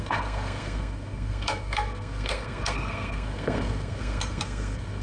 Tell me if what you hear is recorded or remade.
remade